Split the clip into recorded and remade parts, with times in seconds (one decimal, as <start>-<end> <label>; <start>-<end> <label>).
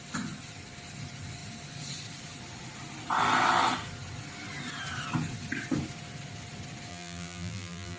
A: 0.0-6.9 recorded; 6.9-8.0 remade